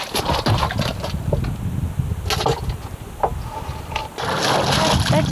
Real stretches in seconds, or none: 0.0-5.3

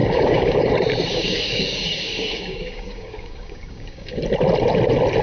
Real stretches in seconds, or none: 0.7-1.1; 4.2-5.2

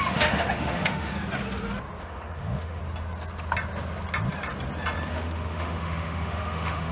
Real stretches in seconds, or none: 1.1-2.0; 2.8-5.1

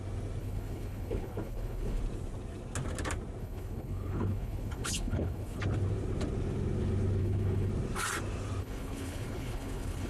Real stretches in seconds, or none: 0.0-0.4; 2.0-3.4; 5.6-7.2; 7.7-8.6

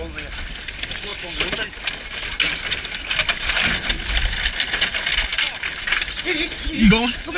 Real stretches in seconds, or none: 0.0-7.4